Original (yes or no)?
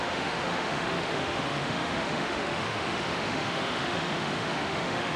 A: no